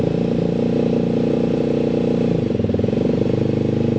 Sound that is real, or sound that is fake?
real